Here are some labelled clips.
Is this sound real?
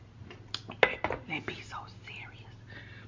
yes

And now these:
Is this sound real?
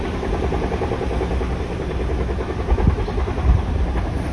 yes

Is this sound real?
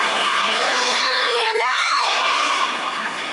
no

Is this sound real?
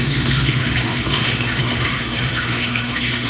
no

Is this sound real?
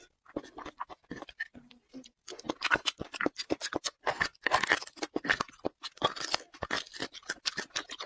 yes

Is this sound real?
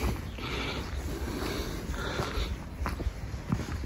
yes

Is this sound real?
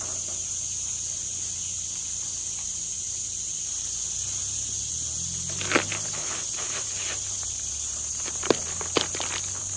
yes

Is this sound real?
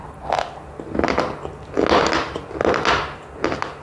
yes